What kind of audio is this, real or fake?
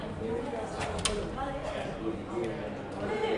real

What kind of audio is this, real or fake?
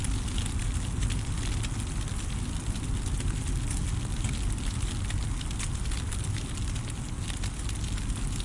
real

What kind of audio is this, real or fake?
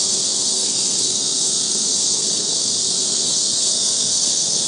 fake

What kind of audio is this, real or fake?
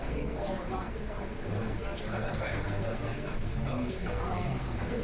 fake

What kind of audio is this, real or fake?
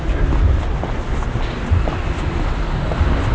real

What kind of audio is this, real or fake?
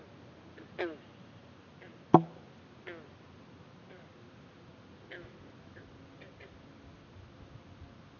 real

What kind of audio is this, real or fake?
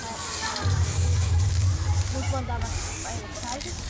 real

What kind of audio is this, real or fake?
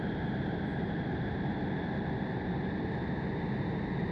real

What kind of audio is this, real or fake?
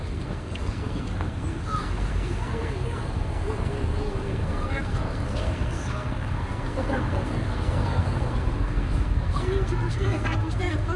fake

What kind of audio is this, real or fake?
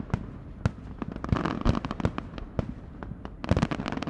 real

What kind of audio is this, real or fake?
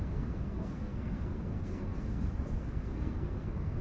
fake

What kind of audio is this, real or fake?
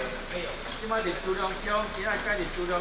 real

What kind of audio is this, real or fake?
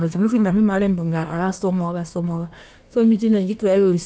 fake